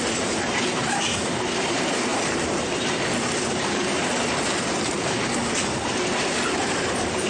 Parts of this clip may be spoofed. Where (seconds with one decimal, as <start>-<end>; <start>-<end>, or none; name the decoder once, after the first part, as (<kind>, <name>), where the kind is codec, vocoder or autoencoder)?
0.0-7.3 (vocoder, BigVGAN v2)